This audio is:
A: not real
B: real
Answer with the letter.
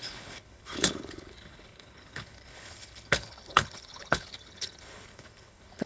A